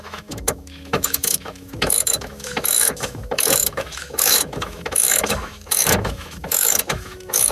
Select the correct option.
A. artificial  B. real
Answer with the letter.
A